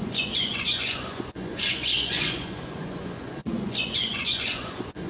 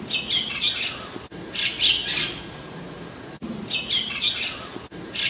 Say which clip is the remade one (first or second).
first